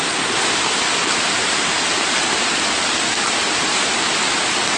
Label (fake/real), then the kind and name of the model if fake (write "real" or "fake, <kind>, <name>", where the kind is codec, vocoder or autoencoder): real